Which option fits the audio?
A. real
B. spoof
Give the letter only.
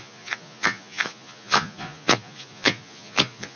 B